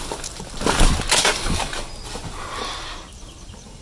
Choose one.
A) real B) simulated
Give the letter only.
A